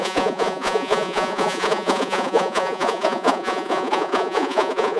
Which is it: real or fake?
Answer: fake